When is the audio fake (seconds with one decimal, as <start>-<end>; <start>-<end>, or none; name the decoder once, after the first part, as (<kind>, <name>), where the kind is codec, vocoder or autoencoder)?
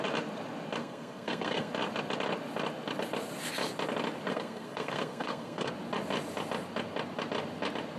0.8-1.7 (codec, SNAC); 4.3-5.7